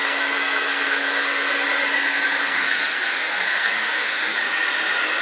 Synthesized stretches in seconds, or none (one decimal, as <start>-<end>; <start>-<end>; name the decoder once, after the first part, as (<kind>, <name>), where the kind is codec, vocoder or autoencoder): 0.0-1.5 (codec, SNAC); 2.4-4.4